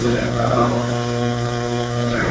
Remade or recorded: remade